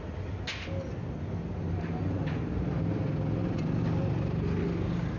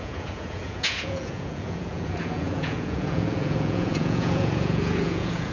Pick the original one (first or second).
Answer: first